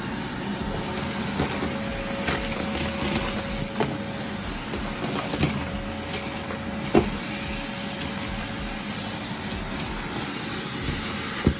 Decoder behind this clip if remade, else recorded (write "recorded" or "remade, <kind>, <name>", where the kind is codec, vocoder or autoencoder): recorded